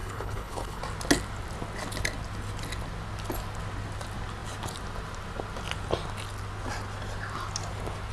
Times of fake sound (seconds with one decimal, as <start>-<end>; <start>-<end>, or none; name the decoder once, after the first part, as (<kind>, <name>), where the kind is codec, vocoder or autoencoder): 0.0-0.8 (codec, HILCodec)